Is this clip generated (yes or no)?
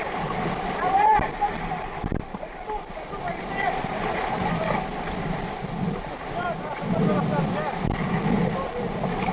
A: no